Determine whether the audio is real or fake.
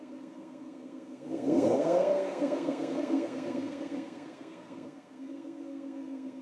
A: fake